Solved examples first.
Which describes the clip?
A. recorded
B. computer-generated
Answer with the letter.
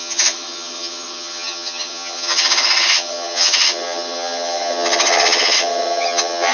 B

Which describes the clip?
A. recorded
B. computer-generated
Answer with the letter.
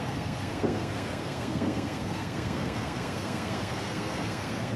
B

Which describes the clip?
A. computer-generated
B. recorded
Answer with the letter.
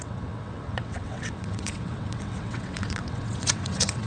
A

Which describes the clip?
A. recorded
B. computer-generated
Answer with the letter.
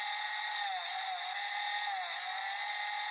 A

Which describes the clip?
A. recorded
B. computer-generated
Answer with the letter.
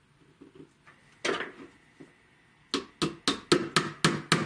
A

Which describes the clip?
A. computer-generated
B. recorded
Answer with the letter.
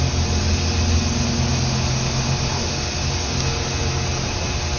B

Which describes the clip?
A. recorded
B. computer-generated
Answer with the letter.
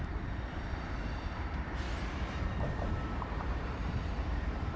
B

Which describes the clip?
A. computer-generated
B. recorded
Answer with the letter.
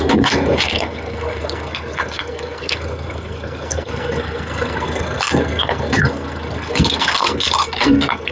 A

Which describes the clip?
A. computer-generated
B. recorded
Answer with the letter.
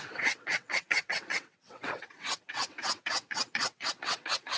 A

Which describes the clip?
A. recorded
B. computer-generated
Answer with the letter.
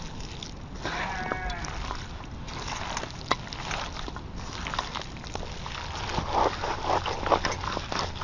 A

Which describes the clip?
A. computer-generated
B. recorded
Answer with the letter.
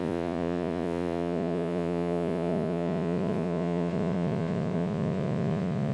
A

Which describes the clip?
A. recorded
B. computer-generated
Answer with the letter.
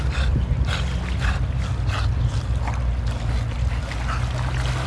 A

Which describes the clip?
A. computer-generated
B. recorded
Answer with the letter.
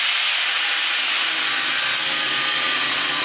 B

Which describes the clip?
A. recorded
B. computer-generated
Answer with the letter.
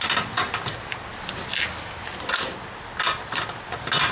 A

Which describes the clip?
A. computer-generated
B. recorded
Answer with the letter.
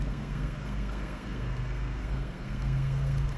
A